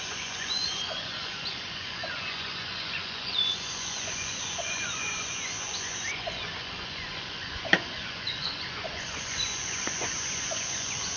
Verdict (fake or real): fake